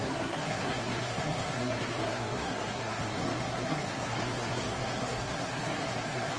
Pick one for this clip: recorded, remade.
remade